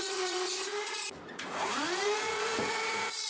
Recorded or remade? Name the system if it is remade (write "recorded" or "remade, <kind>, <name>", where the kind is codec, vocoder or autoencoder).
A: remade, vocoder, Vocos